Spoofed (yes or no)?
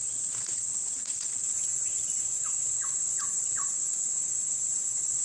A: yes